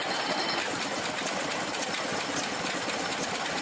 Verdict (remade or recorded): recorded